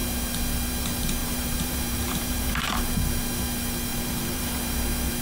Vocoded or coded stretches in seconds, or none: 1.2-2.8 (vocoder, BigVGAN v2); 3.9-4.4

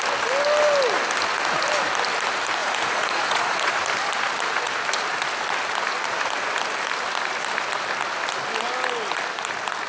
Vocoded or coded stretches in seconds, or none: 2.6-3.7 (vocoder, Vocos)